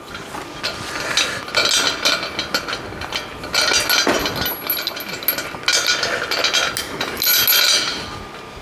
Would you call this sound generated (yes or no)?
no